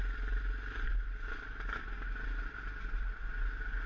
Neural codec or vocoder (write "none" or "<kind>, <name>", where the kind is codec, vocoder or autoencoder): none